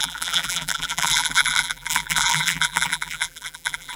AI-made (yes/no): yes